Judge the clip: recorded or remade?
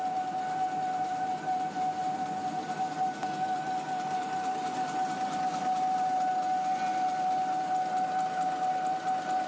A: recorded